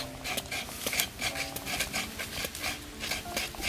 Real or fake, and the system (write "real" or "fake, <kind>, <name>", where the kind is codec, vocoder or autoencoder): real